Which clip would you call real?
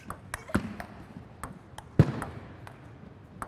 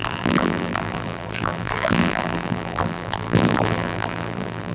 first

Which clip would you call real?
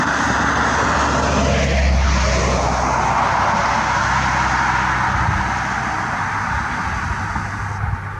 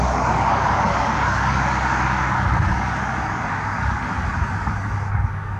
first